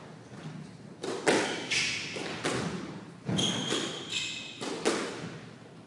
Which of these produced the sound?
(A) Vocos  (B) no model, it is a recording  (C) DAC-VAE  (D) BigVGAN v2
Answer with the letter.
B